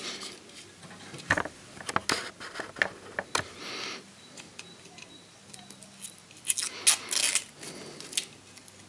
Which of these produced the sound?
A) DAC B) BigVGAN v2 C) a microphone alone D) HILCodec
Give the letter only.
C